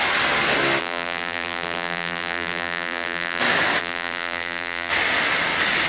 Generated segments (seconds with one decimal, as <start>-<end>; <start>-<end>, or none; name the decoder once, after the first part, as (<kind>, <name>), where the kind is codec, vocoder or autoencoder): 0.8-3.4 (vocoder, BigVGAN v2); 3.8-4.9